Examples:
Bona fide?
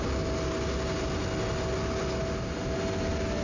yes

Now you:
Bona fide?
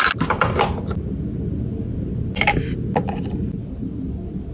yes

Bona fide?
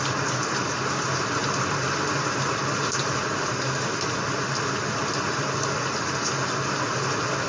yes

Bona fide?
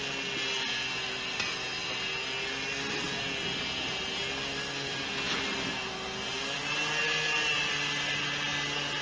yes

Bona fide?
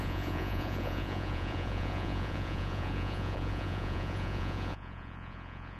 no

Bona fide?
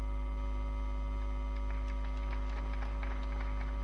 yes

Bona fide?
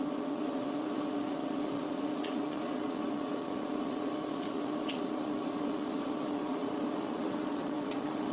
no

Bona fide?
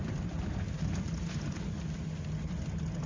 yes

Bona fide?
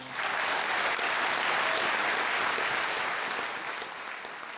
yes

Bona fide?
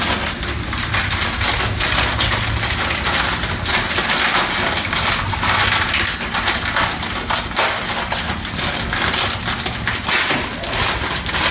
yes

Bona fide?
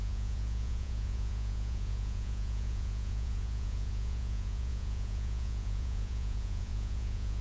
no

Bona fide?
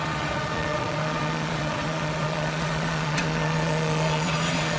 no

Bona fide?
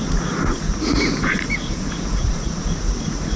no